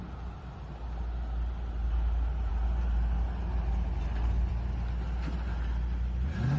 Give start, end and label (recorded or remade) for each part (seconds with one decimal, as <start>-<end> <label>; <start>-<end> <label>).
0.0-6.6 recorded